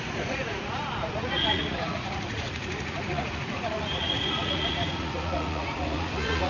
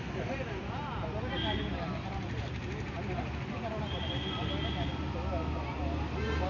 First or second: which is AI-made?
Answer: first